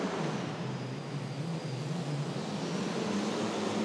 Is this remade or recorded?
recorded